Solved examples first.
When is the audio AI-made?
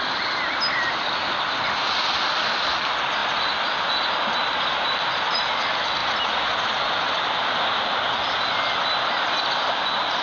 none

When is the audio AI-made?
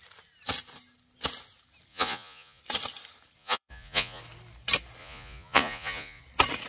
1.9-2.6; 3.4-4.2; 5.0-6.2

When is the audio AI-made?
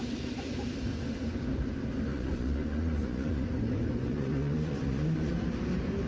2.1-5.3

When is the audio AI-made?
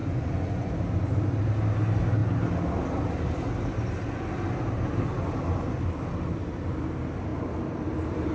0.0-0.7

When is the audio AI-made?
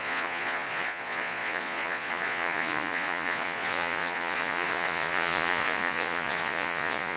0.0-7.2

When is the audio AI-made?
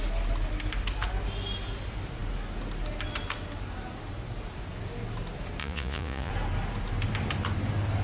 5.6-6.3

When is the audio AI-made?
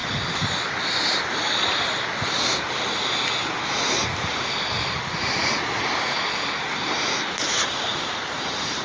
none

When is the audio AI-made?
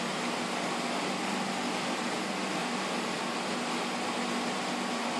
none